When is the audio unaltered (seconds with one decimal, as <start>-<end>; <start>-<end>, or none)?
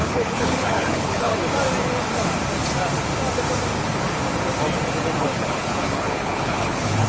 1.3-5.2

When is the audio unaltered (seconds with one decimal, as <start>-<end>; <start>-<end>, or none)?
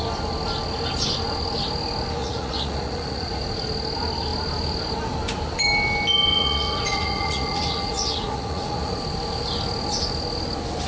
0.0-2.2; 3.4-6.3; 9.0-10.9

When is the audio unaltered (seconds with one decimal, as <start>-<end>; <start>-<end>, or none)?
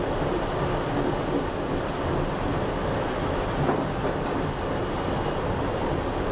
0.0-6.3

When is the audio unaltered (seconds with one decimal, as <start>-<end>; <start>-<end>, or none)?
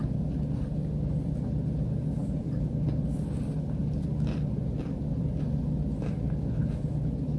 0.0-7.4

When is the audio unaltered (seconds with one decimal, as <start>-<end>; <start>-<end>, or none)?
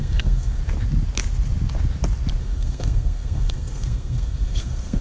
0.6-2.4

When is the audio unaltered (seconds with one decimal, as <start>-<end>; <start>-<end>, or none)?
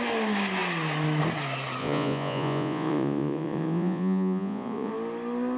0.0-1.8; 4.9-5.6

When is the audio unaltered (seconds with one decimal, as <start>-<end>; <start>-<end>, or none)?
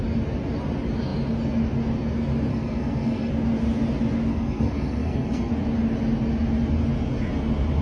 0.0-2.5; 3.3-4.3; 5.5-7.8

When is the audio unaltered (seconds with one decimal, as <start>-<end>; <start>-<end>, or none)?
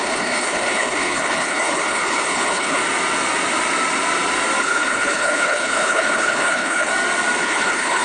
2.8-4.6; 6.9-7.4